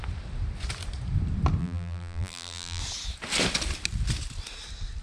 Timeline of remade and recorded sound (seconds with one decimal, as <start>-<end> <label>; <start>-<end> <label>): 0.0-1.6 recorded; 1.6-2.8 remade; 2.8-5.0 recorded